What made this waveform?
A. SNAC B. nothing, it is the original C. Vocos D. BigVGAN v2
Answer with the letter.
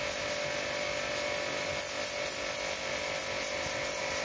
B